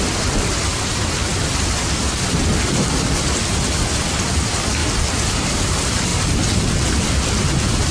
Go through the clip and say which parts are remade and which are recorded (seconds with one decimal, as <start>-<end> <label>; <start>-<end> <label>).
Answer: 0.0-4.8 remade; 4.8-5.3 recorded; 5.3-7.9 remade